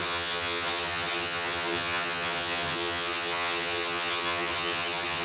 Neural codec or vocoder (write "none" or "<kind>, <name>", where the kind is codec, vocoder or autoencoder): vocoder, HiFi-GAN